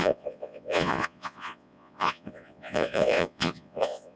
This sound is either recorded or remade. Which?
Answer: remade